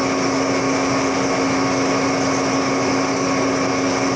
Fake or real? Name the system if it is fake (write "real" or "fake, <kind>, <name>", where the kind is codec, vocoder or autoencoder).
real